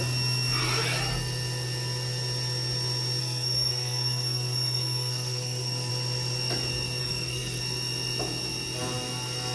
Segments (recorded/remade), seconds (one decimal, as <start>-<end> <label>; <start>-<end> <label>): 0.0-3.2 recorded; 3.2-5.9 remade; 5.9-7.0 recorded; 7.0-7.6 remade; 7.6-9.5 recorded